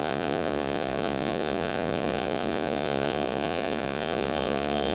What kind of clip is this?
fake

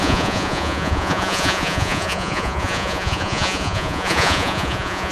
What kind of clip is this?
fake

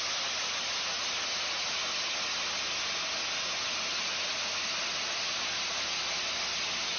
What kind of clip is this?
real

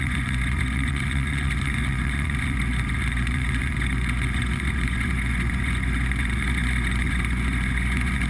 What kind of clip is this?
fake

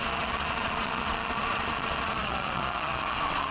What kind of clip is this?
fake